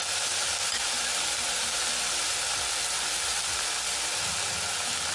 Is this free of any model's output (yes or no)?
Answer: yes